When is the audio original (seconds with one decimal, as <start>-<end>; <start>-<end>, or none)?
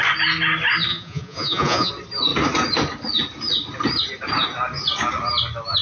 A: 0.0-0.9; 1.9-5.8